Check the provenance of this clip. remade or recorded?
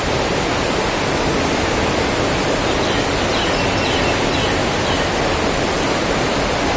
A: recorded